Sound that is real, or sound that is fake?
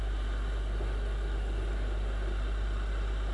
real